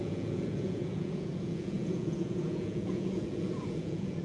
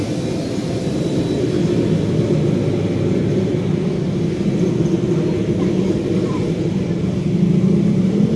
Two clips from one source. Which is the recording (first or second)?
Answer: second